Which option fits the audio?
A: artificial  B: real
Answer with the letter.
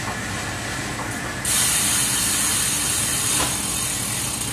B